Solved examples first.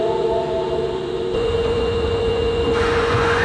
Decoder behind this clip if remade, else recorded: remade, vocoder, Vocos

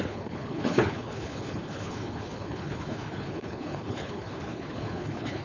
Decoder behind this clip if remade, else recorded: remade, codec, HILCodec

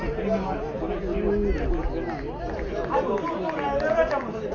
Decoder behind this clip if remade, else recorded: recorded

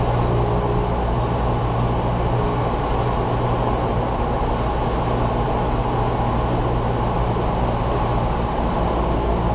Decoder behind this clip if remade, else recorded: recorded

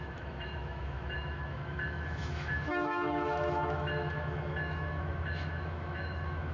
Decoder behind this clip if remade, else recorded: remade, autoencoder, DAC-VAE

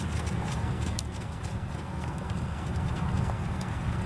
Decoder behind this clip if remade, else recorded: remade, codec, SNAC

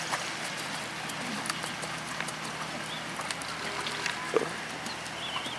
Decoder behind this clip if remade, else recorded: recorded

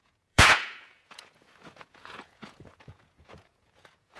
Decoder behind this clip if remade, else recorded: remade, vocoder, Vocos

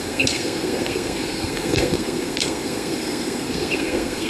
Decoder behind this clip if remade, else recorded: remade, codec, SNAC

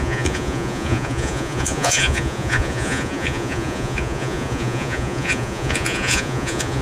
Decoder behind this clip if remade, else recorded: remade, vocoder, Vocos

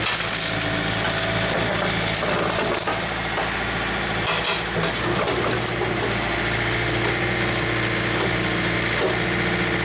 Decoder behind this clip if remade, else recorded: recorded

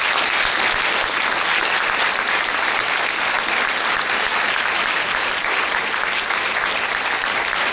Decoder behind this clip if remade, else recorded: recorded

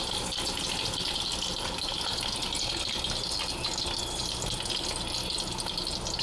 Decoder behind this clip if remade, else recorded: recorded